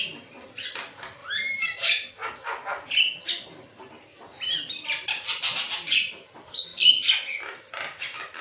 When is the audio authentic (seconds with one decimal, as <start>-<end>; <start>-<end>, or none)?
0.0-1.2; 2.1-8.4